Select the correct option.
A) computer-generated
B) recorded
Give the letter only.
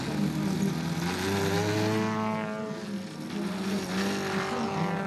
B